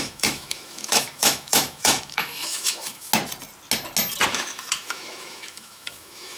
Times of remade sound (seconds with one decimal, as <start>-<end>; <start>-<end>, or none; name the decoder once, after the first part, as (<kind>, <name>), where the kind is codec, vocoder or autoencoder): 0.0-3.1 (autoencoder, DAC-VAE); 4.3-6.4